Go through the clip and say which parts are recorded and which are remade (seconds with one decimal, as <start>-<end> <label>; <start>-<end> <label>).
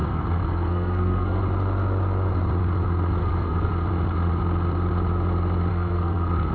0.0-1.4 remade; 1.4-3.2 recorded; 3.2-3.7 remade; 3.7-5.7 recorded; 5.7-6.5 remade